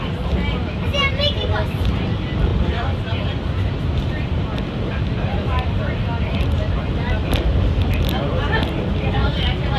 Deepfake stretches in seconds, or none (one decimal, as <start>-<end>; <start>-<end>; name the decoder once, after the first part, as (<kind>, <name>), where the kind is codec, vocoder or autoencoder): 2.5-5.8 (vocoder, BigVGAN v2); 7.5-8.0

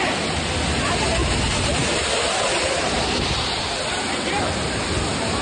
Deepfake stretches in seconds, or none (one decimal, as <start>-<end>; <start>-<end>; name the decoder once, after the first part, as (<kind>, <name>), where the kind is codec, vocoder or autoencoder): none

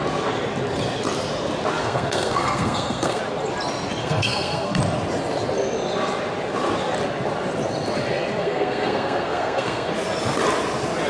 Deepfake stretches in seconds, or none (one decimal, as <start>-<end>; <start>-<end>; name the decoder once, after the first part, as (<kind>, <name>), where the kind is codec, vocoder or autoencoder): 1.8-3.2 (codec, SNAC); 4.0-4.8; 8.4-9.9

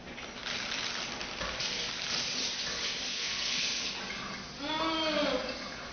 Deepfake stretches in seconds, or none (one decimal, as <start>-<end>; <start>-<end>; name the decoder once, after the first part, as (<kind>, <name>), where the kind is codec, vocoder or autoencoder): 3.1-3.9 (codec, SNAC)